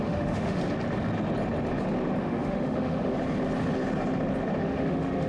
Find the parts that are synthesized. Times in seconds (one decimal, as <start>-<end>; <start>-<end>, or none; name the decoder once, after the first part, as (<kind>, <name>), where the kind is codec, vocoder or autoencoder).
0.0-0.6 (autoencoder, DAC-VAE); 2.2-3.1; 4.6-5.3